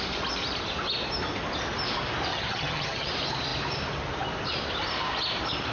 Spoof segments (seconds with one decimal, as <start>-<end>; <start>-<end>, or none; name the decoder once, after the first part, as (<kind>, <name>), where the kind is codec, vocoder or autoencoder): 2.3-3.1 (vocoder, HiFi-GAN)